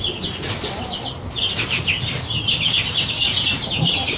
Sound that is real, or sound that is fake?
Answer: real